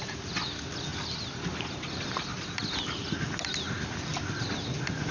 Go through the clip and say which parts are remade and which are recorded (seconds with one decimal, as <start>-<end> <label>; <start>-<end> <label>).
0.0-5.1 recorded